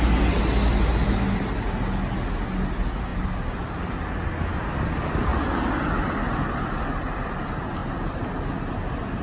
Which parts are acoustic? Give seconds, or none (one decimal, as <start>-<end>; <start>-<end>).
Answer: 0.0-3.1; 3.8-9.2